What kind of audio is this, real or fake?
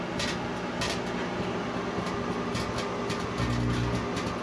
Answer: real